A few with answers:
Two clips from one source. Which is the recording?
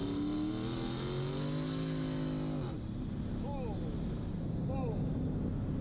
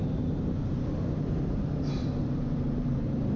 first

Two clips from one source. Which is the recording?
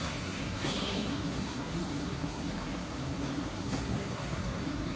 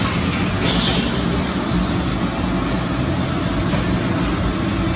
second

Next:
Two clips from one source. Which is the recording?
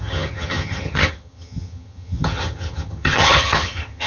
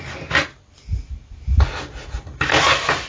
second